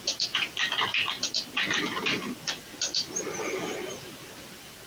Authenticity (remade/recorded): recorded